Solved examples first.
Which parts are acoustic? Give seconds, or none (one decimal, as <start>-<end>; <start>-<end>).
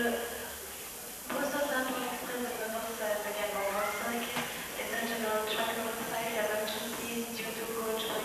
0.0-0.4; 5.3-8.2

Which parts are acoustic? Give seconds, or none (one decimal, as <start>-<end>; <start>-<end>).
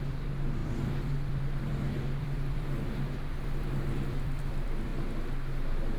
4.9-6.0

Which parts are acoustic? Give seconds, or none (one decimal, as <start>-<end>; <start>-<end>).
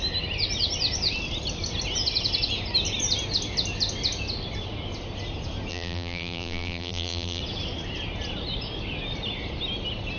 0.0-5.7; 7.4-10.2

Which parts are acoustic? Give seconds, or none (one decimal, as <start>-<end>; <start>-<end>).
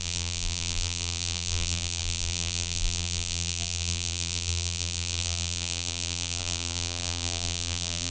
none